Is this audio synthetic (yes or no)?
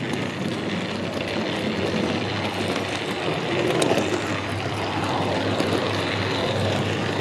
no